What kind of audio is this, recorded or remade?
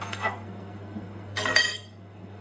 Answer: remade